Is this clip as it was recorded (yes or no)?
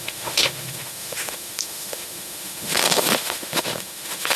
no